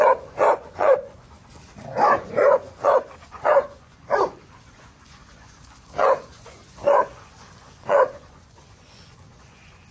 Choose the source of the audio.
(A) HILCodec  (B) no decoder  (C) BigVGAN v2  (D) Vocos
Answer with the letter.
D